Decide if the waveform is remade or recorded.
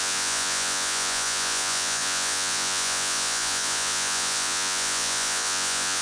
remade